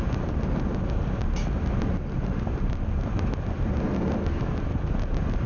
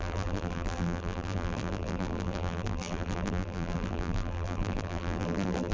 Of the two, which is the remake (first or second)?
second